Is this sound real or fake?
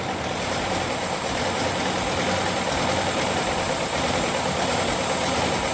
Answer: real